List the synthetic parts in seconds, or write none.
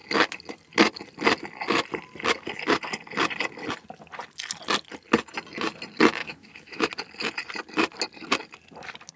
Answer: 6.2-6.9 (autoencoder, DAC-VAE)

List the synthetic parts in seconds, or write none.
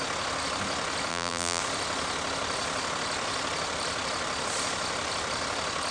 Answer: 1.1-1.6 (vocoder, BigVGAN v2)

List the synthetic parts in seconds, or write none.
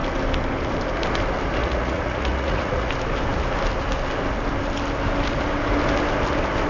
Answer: 1.6-2.9 (vocoder, Vocos)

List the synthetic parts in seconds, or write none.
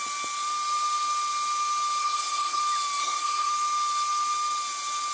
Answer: 2.0-2.6 (codec, SNAC); 3.0-3.5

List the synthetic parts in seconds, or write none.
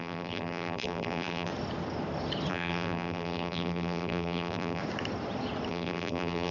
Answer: 0.0-1.5 (vocoder, BigVGAN v2); 2.5-4.8; 5.7-6.5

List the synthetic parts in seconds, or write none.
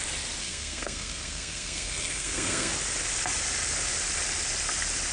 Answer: 0.4-2.7 (codec, SNAC)